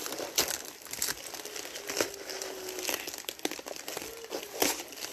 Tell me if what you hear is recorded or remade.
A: recorded